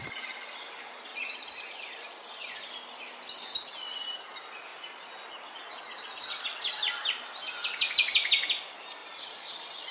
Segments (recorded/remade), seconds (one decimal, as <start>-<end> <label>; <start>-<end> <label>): 0.0-1.1 recorded; 1.1-2.7 remade; 2.7-9.0 recorded; 9.0-9.9 remade